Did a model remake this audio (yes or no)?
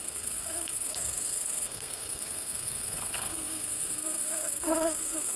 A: yes